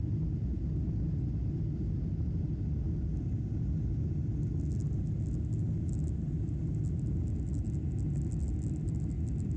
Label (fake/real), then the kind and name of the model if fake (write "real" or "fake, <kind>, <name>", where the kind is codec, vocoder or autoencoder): real